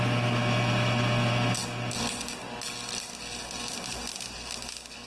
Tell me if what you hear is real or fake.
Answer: real